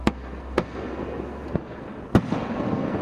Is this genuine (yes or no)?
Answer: no